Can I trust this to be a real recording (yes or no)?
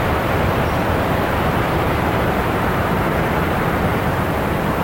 no